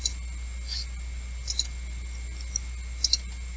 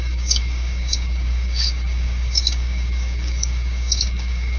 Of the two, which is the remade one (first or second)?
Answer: second